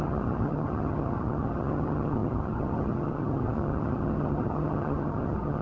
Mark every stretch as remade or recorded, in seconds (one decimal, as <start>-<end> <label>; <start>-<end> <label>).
0.0-5.6 remade